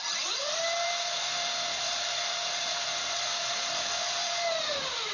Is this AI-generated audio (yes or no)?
yes